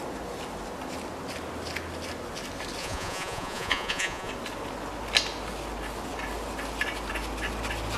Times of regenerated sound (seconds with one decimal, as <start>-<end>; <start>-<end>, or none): 2.8-4.3